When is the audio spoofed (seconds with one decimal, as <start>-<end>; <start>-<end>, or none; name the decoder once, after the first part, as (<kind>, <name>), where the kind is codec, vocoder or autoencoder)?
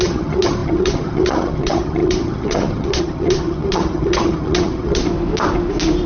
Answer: 0.0-5.0 (vocoder, HiFi-GAN)